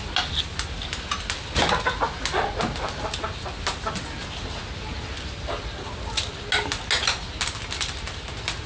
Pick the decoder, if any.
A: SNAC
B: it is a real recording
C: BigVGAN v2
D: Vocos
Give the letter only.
B